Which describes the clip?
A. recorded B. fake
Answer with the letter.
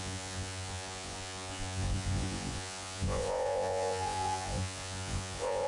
B